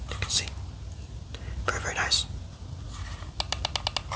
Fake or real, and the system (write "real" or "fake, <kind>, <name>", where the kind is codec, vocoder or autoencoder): real